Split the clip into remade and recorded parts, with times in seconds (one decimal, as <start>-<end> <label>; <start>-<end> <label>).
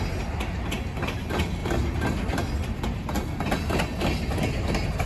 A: 0.0-5.1 recorded